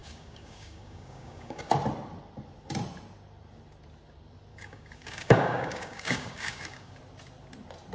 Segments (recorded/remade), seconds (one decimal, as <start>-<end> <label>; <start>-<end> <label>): 0.0-1.7 remade; 1.7-4.5 recorded; 4.5-7.0 remade; 7.0-7.9 recorded